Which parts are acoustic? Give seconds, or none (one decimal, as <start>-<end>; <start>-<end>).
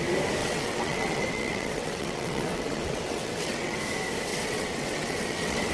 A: 0.0-0.4; 3.8-4.3